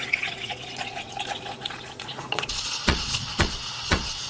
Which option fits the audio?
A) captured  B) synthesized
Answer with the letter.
B